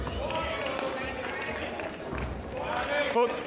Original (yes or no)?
yes